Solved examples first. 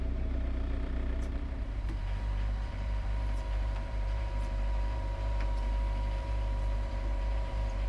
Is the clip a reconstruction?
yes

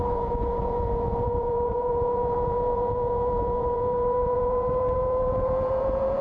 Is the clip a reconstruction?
yes